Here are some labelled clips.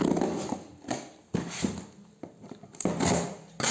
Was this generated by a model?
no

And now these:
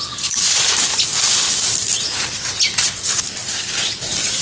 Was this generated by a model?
no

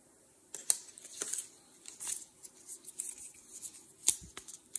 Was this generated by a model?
no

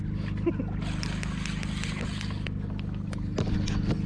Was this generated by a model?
no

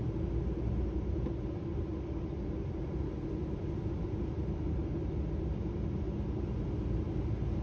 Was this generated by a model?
no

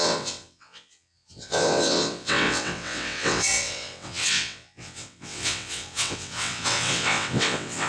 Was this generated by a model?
yes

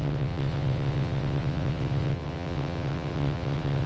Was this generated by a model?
yes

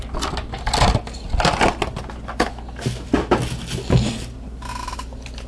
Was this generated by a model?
no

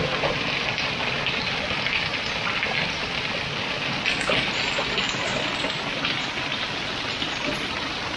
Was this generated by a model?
no